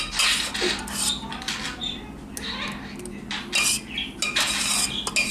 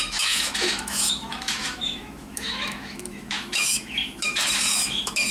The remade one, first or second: second